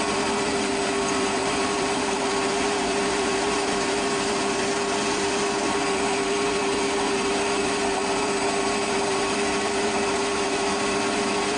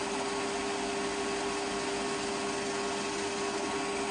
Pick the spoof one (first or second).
first